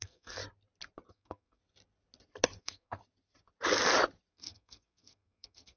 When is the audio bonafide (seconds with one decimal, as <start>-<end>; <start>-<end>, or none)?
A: 0.4-1.1; 1.6-2.6; 3.0-4.3